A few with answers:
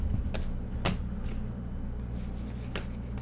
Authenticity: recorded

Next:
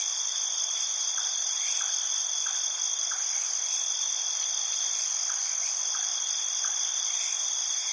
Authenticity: remade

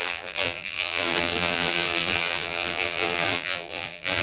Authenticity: remade